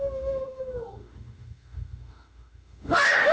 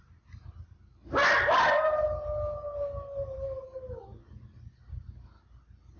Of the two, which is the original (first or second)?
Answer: second